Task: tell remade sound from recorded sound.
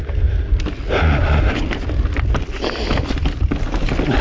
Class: recorded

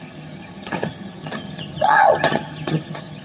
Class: remade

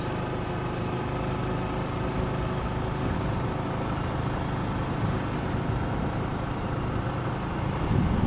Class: recorded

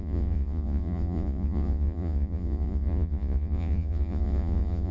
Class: remade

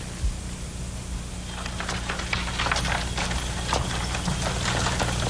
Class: recorded